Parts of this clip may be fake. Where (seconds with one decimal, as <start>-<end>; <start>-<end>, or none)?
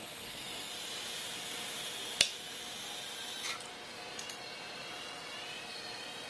0.0-0.7